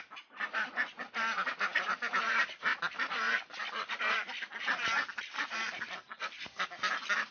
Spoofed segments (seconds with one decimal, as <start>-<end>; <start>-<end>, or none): none